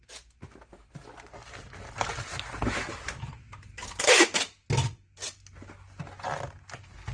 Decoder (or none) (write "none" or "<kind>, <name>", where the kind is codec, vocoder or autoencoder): none